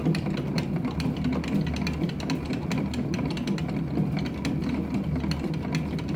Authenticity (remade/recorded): recorded